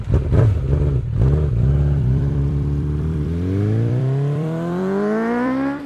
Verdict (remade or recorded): remade